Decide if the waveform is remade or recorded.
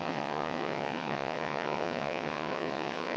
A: remade